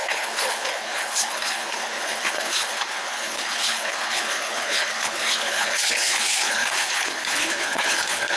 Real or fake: fake